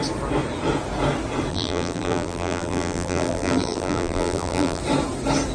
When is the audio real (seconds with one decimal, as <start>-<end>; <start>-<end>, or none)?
0.0-1.5; 4.8-5.5